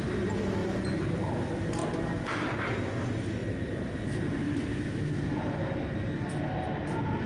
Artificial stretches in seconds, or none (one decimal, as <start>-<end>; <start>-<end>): 1.8-2.8; 3.4-5.7